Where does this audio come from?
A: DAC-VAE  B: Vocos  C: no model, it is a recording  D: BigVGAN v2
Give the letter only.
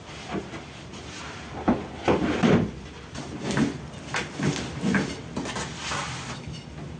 C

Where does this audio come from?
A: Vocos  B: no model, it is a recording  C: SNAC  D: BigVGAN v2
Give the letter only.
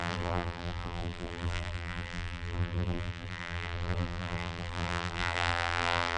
D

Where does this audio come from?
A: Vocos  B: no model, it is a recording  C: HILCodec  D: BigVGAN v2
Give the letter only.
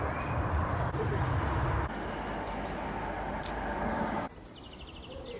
B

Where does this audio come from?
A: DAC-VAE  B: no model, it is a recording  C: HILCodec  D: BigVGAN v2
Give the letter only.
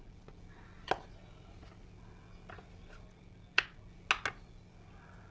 B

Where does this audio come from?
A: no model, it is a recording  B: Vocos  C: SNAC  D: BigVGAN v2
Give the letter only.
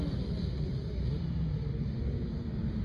D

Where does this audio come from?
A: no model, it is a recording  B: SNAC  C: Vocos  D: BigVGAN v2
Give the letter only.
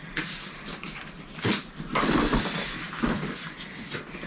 A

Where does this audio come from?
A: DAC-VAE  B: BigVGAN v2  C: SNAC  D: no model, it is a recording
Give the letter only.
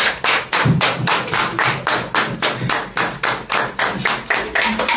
D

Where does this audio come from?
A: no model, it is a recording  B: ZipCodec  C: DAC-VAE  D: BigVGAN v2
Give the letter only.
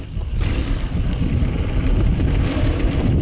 D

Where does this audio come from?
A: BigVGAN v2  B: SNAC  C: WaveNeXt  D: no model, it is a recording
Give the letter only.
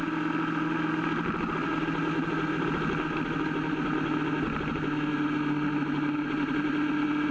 D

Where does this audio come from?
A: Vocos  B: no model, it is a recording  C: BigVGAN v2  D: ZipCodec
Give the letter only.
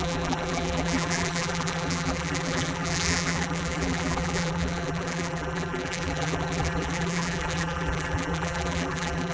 C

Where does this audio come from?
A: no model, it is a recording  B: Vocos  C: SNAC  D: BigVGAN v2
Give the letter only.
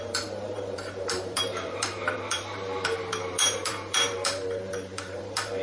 D